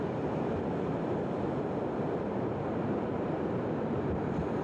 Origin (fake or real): real